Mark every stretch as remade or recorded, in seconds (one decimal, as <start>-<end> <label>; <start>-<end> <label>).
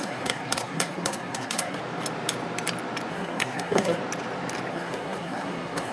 0.0-1.8 remade; 1.8-3.1 recorded; 3.1-4.0 remade; 4.0-4.7 recorded; 4.7-5.9 remade